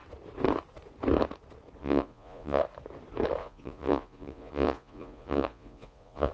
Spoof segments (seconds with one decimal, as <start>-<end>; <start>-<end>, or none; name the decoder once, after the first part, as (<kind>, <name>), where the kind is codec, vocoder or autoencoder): 1.8-2.6 (vocoder, Vocos); 3.4-6.3